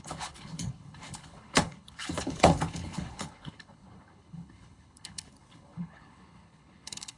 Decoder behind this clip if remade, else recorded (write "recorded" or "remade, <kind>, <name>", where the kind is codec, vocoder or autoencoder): remade, codec, HILCodec